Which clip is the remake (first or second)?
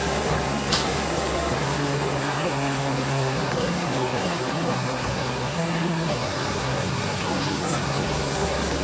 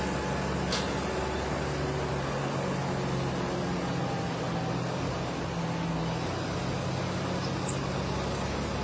first